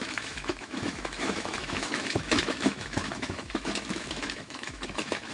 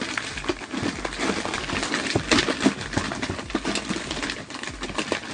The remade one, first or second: first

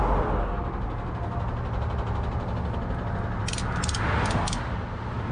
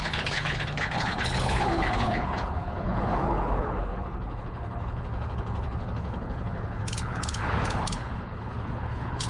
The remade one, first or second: second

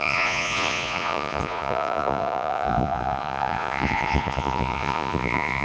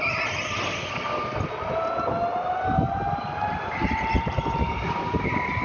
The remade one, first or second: first